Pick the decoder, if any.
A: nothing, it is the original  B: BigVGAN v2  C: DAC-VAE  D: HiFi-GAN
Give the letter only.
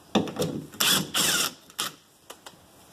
A